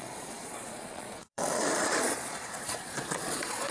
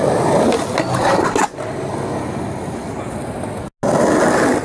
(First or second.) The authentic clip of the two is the second